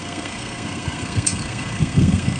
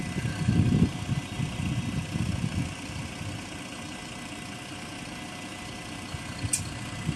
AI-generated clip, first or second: first